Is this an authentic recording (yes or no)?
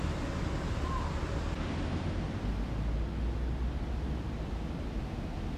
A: yes